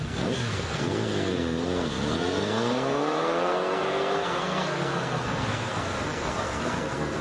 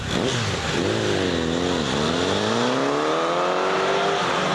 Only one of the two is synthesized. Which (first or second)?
first